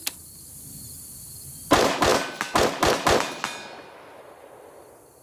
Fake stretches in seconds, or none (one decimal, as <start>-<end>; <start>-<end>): none